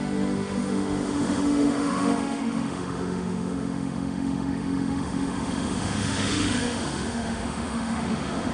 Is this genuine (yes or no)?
no